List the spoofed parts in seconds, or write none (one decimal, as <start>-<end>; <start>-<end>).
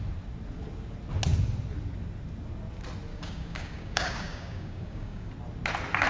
3.1-5.3